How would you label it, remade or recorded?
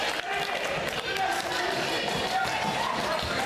recorded